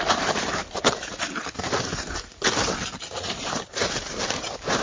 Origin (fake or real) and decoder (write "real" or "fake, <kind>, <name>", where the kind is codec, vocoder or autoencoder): fake, vocoder, BigVGAN v2